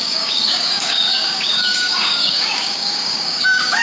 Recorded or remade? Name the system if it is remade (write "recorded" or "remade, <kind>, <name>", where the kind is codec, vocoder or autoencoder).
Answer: remade, codec, DAC